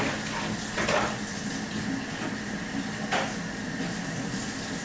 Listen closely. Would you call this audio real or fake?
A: fake